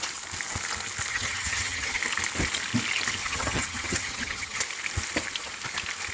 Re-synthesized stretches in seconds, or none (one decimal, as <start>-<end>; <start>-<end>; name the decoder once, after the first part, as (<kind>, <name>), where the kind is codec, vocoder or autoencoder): 1.1-2.0 (vocoder, HiFi-GAN); 3.2-4.6